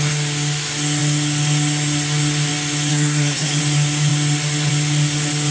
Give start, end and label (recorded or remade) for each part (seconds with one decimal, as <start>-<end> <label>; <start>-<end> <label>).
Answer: 0.0-2.9 recorded; 2.9-3.6 remade; 3.6-5.5 recorded